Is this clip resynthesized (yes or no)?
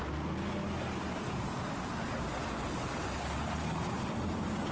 no